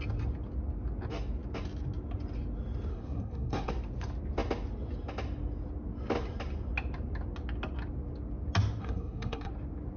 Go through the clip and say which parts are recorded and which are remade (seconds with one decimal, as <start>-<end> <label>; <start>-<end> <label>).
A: 0.0-2.9 recorded; 2.9-3.7 remade; 3.7-8.8 recorded; 8.8-9.5 remade; 9.5-10.0 recorded